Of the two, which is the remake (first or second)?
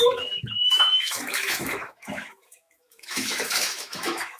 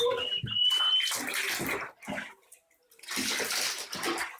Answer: first